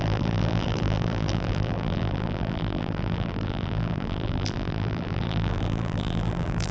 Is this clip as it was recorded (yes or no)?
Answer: no